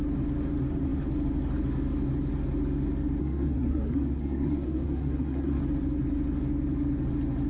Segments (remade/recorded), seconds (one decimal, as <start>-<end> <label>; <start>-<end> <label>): 0.0-3.2 recorded; 3.2-5.6 remade; 5.6-7.5 recorded